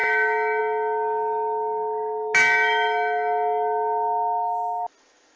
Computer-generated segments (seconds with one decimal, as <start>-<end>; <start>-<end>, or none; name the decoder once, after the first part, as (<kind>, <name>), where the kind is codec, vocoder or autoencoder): none